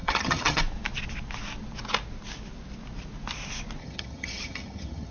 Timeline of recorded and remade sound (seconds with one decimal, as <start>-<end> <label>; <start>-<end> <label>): 0.0-0.6 remade; 0.6-3.8 recorded; 3.8-5.1 remade